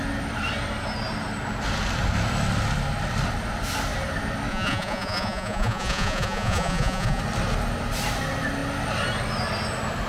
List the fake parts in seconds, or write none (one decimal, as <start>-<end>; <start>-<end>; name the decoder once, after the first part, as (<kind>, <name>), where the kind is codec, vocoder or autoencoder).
4.5-7.2 (vocoder, Vocos)